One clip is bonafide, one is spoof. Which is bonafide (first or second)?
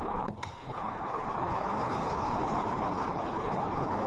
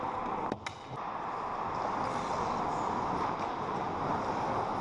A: second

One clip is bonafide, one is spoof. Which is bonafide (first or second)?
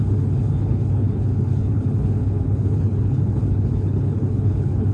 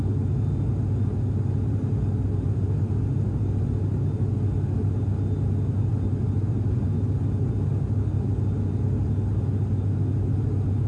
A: second